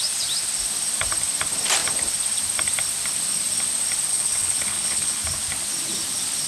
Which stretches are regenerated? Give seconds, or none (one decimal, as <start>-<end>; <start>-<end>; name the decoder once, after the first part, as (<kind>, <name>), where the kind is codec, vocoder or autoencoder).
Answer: 4.1-5.2 (codec, HILCodec)